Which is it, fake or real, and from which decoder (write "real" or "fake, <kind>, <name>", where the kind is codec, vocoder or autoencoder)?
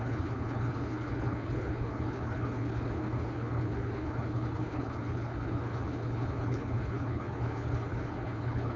fake, codec, HILCodec